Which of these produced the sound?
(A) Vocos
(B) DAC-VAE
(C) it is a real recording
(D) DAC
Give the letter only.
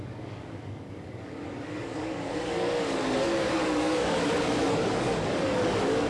D